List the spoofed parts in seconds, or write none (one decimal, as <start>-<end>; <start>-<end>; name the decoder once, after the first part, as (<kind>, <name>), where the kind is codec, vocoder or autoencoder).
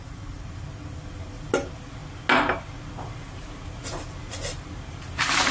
none